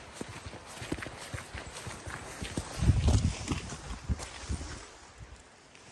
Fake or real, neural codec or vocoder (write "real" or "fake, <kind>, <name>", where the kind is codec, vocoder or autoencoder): real